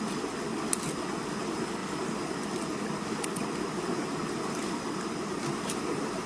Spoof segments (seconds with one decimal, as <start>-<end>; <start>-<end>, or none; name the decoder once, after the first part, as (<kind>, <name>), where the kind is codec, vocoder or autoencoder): none